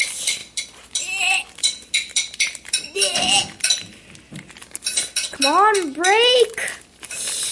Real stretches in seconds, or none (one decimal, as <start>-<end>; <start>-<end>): 0.0-7.5